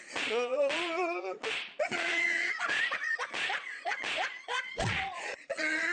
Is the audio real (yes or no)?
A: no